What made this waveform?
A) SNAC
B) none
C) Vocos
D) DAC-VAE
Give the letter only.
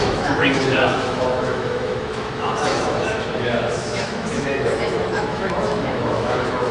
D